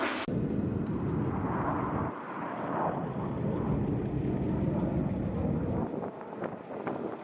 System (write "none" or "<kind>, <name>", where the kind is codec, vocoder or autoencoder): none